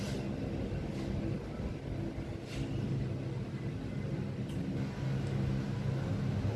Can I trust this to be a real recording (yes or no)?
yes